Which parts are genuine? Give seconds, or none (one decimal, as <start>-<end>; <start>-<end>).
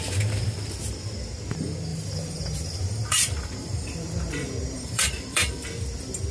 0.0-1.9; 5.5-6.3